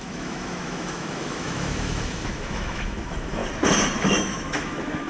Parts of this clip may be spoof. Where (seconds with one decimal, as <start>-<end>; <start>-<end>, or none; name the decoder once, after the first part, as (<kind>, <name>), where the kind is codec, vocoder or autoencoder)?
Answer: 0.0-3.4 (autoencoder, DAC-VAE); 4.0-5.1